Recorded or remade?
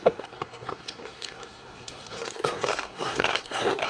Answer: remade